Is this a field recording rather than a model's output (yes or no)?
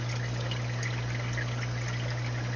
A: yes